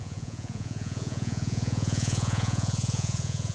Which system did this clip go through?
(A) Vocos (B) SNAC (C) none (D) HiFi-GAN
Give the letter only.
A